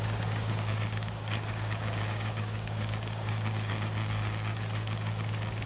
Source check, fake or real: fake